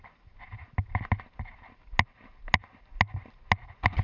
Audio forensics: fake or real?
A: real